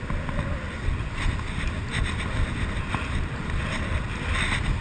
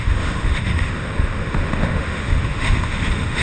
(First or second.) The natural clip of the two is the first